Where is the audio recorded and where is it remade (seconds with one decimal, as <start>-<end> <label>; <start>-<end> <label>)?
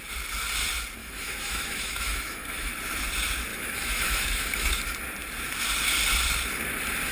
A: 0.0-1.0 recorded; 1.0-2.7 remade; 2.7-3.5 recorded; 3.5-4.8 remade; 4.8-7.1 recorded